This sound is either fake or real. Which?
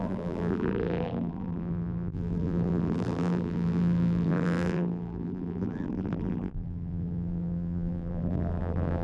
fake